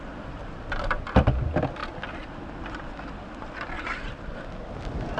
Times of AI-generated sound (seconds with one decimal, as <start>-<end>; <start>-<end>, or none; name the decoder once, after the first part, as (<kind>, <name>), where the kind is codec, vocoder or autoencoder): none